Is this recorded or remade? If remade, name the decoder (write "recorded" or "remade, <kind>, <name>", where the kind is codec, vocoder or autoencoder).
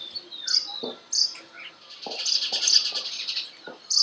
remade, vocoder, BigVGAN v2